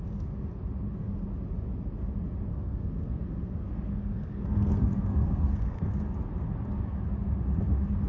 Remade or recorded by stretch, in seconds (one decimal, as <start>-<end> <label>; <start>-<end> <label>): 0.0-2.5 recorded; 2.5-6.1 remade; 6.1-8.1 recorded